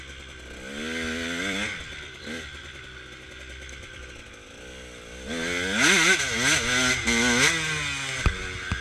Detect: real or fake real